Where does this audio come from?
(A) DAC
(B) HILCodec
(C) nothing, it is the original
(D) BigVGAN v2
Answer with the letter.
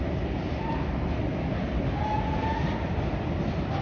C